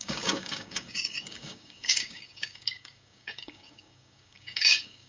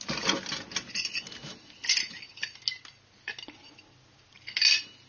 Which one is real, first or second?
second